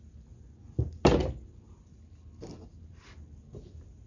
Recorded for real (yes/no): yes